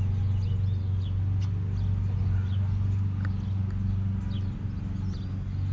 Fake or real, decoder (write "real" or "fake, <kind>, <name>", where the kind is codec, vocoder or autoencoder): real